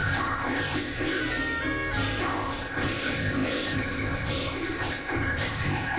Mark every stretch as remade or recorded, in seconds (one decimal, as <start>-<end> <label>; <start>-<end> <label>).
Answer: 0.0-1.2 remade; 1.2-2.2 recorded; 2.2-6.0 remade

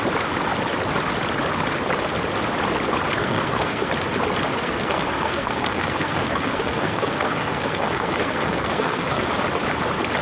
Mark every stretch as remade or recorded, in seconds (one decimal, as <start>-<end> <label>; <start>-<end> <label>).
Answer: 0.0-3.2 recorded; 3.2-3.9 remade; 3.9-4.5 recorded; 4.5-9.3 remade; 9.3-10.2 recorded

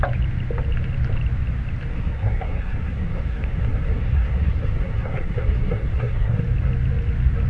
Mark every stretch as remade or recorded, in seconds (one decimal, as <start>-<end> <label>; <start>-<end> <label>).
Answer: 0.0-1.9 recorded; 1.9-6.4 remade; 6.4-7.5 recorded

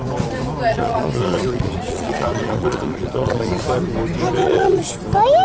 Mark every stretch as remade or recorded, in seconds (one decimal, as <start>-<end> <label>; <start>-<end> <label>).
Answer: 0.0-0.7 recorded; 0.7-3.6 remade; 3.6-4.4 recorded; 4.4-4.9 remade; 4.9-5.4 recorded

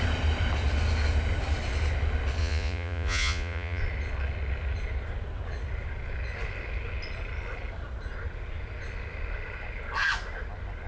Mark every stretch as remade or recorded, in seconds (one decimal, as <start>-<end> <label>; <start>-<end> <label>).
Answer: 0.0-2.4 recorded; 2.4-3.8 remade; 3.8-10.9 recorded

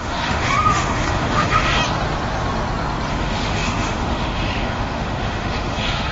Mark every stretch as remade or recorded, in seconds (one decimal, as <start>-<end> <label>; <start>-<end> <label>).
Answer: 0.0-1.8 remade; 1.8-3.1 recorded; 3.1-6.1 remade